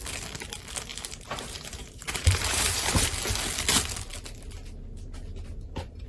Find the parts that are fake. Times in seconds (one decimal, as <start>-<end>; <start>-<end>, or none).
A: 0.9-3.1